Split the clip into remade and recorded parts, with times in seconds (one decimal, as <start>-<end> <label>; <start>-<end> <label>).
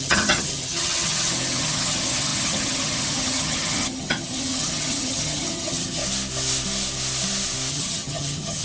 0.0-6.0 remade; 6.0-7.7 recorded; 7.7-8.6 remade